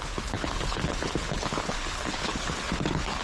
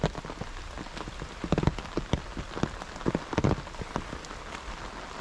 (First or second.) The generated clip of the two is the first